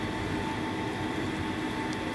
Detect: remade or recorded recorded